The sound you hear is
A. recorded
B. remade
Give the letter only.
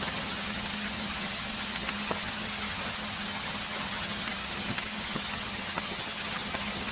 B